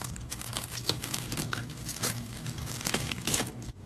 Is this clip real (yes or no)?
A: no